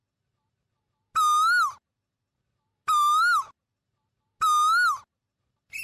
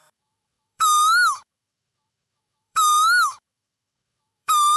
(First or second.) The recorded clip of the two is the first